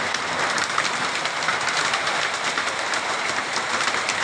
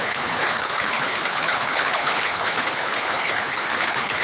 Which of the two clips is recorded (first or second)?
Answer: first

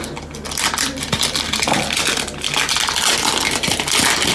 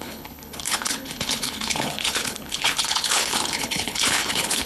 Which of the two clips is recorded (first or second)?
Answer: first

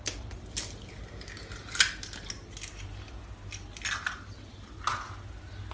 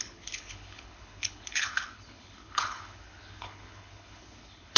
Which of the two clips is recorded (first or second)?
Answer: first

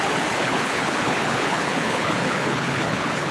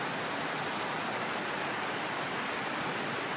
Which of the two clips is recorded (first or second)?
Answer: second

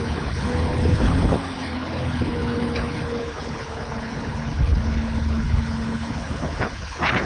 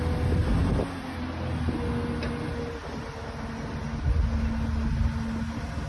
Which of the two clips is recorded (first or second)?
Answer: second